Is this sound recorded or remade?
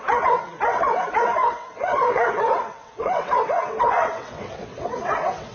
remade